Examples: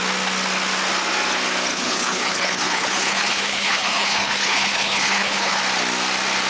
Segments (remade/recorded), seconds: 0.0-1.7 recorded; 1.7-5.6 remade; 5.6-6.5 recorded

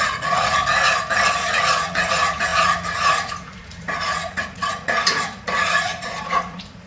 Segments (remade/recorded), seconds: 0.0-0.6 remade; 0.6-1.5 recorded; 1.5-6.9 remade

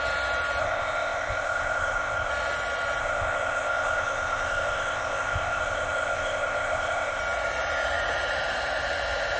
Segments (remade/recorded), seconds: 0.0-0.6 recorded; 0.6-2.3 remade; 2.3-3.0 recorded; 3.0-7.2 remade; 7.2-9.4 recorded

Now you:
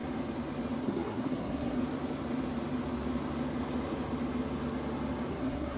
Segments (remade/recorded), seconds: 0.0-0.8 recorded; 0.8-1.8 remade; 1.8-5.3 recorded; 5.3-5.8 remade